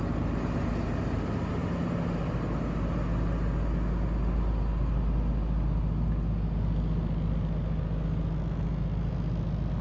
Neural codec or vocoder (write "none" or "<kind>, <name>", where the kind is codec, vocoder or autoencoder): none